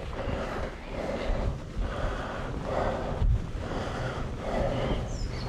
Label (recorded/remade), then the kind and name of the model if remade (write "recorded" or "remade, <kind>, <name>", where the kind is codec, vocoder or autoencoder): recorded